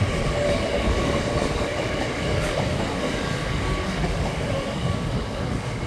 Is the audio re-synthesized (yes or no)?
yes